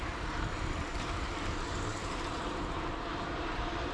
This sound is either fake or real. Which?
fake